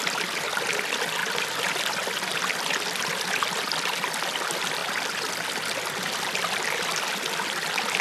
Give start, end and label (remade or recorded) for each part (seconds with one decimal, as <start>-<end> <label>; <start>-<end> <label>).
0.0-8.0 recorded